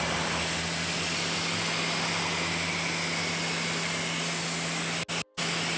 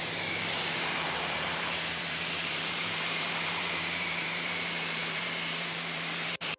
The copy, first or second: second